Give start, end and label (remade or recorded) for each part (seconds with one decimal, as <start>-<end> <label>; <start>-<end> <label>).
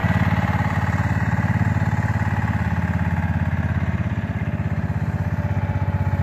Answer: 0.0-1.7 remade; 1.7-6.2 recorded